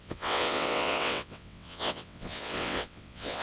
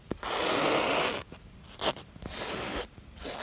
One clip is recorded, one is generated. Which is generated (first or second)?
first